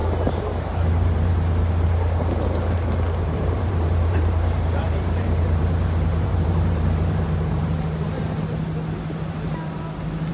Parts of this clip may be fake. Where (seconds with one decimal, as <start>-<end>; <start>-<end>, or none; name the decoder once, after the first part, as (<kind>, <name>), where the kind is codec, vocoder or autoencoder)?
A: 0.7-1.3 (vocoder, BigVGAN v2); 3.2-7.6